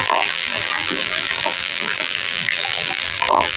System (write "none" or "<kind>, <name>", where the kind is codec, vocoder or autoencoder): vocoder, BigVGAN v2